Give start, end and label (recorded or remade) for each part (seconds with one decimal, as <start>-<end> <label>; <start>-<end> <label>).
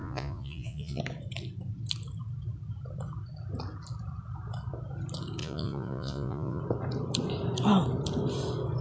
0.0-1.0 remade; 1.0-5.4 recorded; 5.4-6.6 remade; 6.6-8.8 recorded